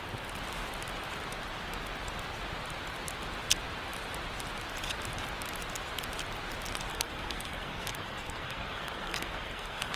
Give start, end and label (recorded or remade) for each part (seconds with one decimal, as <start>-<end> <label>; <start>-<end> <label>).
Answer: 0.0-6.9 recorded; 6.9-10.0 remade